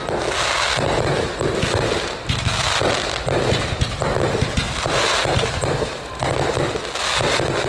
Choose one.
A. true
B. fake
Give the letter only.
A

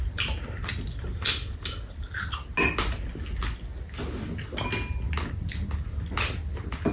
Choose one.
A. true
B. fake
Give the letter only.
A